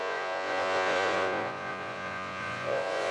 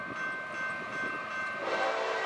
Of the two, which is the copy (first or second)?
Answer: first